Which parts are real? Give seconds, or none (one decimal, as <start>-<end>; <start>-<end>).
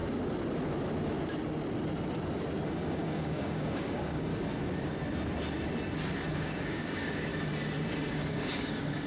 0.0-2.7; 4.3-6.3; 7.3-8.1